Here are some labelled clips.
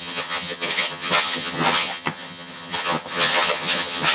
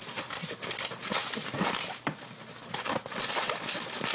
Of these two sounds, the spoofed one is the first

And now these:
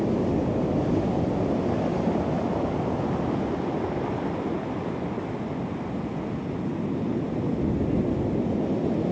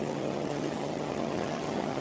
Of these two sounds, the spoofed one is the second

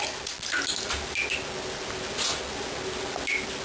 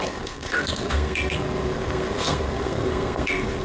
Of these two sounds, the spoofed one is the second